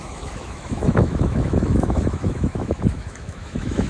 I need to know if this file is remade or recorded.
remade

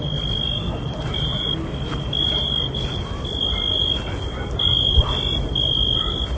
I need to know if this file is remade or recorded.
recorded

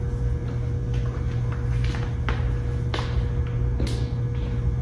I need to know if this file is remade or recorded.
recorded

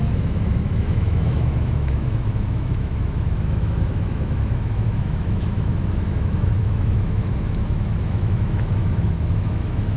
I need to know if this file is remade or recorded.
remade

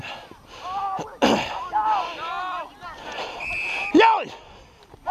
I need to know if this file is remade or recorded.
recorded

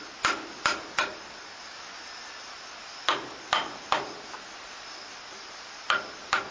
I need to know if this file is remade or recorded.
recorded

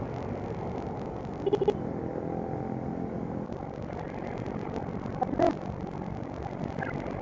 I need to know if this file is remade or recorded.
recorded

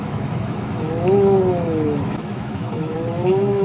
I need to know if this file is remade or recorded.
remade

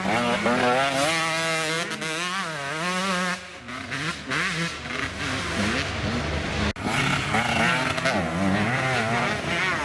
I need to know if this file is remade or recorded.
recorded